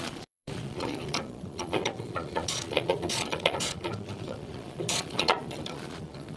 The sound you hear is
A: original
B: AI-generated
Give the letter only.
B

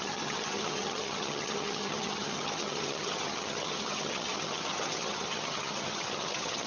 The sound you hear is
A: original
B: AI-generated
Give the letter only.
B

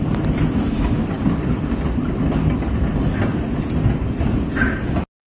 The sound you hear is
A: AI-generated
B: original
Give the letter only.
B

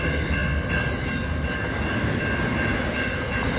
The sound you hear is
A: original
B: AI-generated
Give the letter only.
A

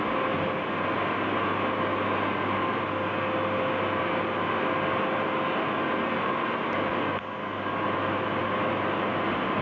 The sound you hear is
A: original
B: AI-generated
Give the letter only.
A